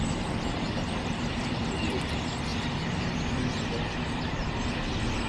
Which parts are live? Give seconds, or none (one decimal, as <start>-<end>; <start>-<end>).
0.0-5.3